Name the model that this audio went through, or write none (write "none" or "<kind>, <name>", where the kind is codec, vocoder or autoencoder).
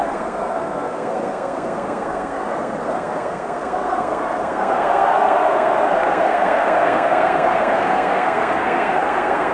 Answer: codec, SNAC